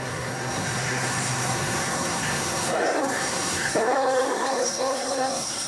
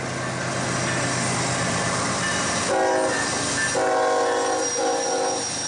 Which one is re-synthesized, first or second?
first